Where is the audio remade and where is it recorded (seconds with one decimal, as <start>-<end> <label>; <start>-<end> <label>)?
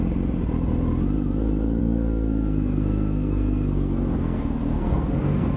0.0-1.8 recorded; 1.8-5.6 remade